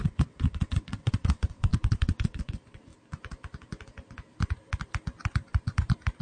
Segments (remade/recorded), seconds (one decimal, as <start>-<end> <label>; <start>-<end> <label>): 0.0-2.9 remade; 2.9-6.2 recorded